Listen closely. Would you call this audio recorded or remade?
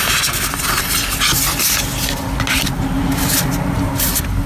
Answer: recorded